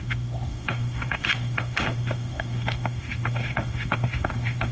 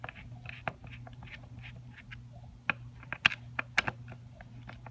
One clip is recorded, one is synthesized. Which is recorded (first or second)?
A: second